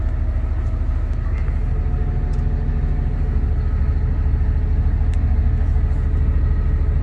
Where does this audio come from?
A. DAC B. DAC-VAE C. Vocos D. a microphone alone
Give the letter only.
D